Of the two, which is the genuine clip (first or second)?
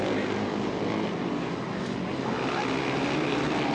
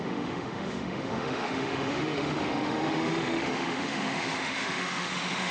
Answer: first